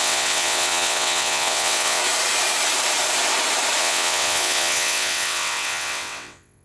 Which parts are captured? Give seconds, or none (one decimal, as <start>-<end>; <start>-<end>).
2.0-3.8